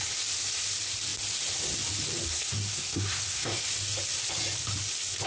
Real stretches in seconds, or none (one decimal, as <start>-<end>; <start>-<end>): 0.0-2.3; 3.6-5.3